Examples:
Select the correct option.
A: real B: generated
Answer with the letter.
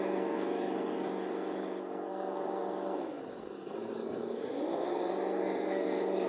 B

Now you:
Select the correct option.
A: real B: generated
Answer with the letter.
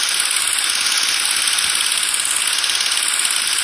A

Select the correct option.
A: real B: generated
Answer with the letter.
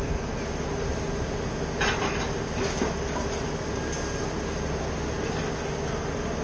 A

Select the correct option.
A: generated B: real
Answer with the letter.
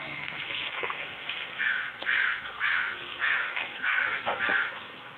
A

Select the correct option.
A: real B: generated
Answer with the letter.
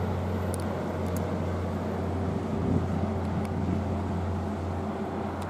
A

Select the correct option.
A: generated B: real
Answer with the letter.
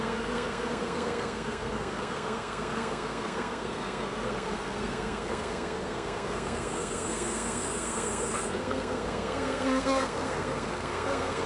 A